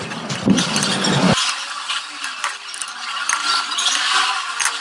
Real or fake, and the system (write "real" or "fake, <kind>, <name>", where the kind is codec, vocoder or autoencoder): real